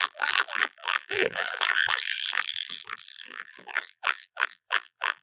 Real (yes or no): no